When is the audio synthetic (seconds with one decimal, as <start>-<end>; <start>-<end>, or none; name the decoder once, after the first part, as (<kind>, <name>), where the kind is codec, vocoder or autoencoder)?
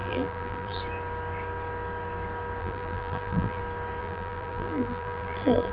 0.0-0.8 (vocoder, BigVGAN v2); 2.6-3.6; 4.0-5.7